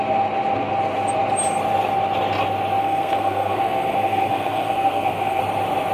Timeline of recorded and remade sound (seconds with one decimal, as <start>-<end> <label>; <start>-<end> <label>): 0.0-2.8 recorded; 2.8-5.4 remade; 5.4-5.9 recorded